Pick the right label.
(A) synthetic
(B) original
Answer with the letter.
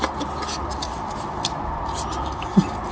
B